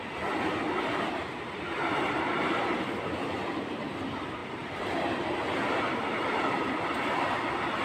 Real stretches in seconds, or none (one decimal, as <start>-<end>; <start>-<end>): 0.0-7.8